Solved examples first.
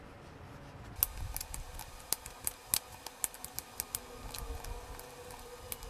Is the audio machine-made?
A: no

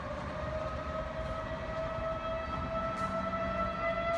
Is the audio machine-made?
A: no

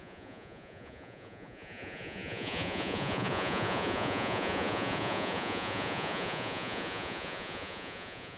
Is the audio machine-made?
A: yes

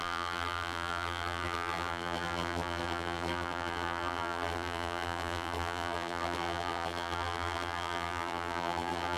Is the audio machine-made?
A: yes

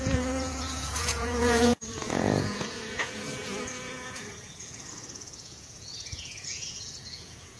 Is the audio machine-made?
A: yes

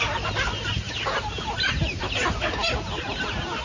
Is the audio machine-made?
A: no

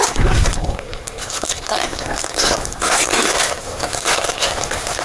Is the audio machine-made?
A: yes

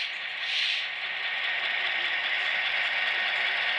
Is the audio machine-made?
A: yes